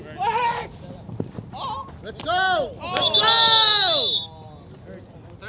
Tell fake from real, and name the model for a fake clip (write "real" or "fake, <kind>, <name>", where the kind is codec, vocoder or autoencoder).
real